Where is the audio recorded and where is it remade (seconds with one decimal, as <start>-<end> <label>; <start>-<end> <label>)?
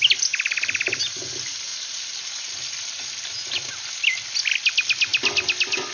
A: 0.0-5.9 recorded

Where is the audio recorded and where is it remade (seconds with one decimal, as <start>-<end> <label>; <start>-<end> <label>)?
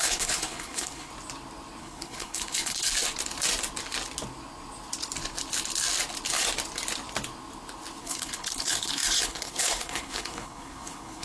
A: 0.0-1.1 remade; 1.1-1.8 recorded; 1.8-2.9 remade; 2.9-8.0 recorded; 8.0-11.2 remade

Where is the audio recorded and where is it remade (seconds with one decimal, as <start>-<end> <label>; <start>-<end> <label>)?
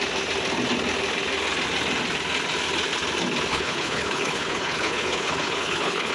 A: 0.0-3.5 recorded; 3.5-6.1 remade